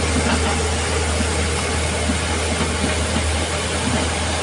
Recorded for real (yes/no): yes